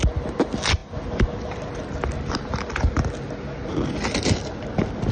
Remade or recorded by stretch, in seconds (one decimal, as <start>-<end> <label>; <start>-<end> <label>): 0.0-5.1 recorded

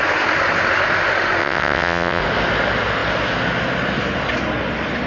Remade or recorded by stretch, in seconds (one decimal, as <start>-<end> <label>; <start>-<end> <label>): 0.0-1.4 recorded; 1.4-2.2 remade; 2.2-5.1 recorded

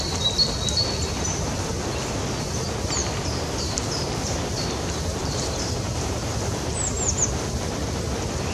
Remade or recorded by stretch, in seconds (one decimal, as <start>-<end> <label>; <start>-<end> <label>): 0.0-3.0 recorded; 3.0-3.9 remade; 3.9-5.2 recorded; 5.2-6.1 remade; 6.1-8.5 recorded

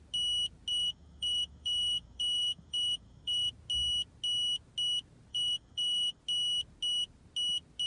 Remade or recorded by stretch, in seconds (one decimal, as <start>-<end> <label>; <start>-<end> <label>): 0.0-0.7 recorded; 0.7-3.5 remade; 3.5-5.3 recorded; 5.3-6.2 remade; 6.2-7.9 recorded

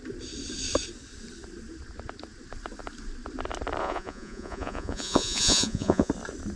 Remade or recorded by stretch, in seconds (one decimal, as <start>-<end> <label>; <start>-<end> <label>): 0.0-3.8 recorded; 3.8-6.1 remade; 6.1-6.6 recorded

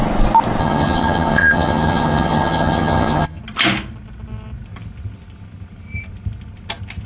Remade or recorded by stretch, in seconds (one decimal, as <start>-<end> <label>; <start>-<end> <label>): 0.0-0.6 recorded; 0.6-3.4 remade; 3.4-7.1 recorded

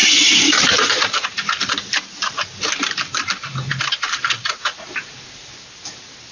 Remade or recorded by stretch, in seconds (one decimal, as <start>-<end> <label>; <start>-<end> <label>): 0.0-6.3 remade